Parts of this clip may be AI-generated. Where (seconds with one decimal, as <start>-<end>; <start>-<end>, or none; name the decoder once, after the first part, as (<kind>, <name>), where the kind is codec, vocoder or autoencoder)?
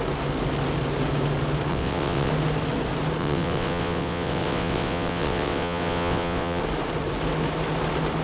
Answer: 1.7-2.3 (vocoder, WaveNeXt); 3.2-6.6